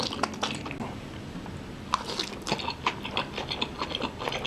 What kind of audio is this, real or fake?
real